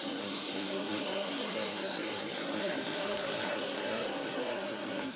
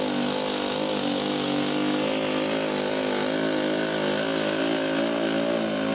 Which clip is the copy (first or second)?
first